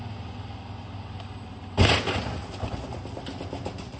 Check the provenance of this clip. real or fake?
real